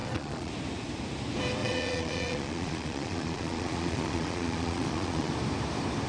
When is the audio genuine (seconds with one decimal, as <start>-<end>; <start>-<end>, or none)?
0.5-1.6; 5.3-6.1